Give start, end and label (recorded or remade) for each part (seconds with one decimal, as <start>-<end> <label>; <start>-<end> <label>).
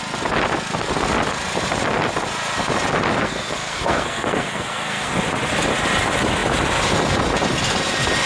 0.0-3.2 recorded; 3.2-5.1 remade; 5.1-8.3 recorded